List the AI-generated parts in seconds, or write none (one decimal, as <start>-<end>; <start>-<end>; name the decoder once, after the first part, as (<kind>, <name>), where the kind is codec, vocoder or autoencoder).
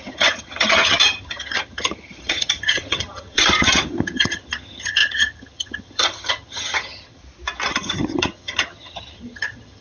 0.0-7.2 (vocoder, HiFi-GAN); 7.7-9.8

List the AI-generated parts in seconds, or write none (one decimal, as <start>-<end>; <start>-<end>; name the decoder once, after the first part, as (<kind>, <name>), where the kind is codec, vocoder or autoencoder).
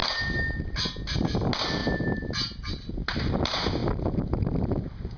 none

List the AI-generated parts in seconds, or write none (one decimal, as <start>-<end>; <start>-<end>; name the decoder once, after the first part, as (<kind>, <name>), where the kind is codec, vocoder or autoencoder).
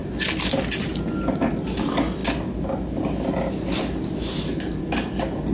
none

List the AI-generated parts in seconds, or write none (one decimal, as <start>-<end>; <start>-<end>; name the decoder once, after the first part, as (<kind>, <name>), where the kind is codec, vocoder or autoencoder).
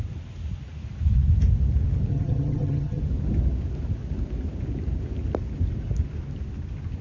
2.1-3.0 (vocoder, HiFi-GAN)